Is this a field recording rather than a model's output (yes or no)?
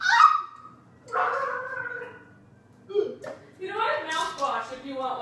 yes